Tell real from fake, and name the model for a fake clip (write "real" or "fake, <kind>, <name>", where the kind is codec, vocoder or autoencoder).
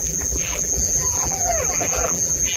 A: fake, vocoder, BigVGAN v2